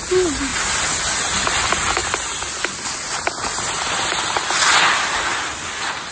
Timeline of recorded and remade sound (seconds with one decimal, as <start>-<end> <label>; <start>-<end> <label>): 0.0-6.1 recorded